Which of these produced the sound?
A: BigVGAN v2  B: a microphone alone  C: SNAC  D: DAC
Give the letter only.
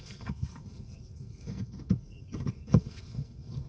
C